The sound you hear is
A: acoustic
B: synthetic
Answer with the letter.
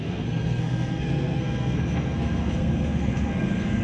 B